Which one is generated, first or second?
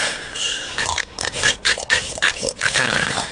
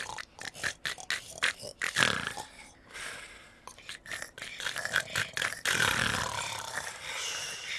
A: first